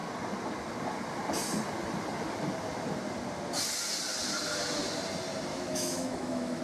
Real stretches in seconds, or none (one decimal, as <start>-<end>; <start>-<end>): 0.0-5.5